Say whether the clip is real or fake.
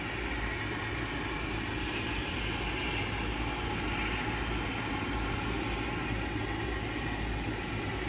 real